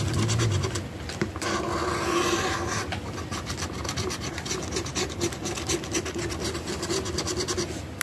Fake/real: real